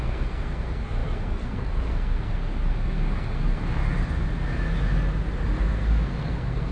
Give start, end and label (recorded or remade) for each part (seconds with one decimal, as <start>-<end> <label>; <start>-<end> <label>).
0.0-3.8 remade; 3.8-5.6 recorded; 5.6-6.7 remade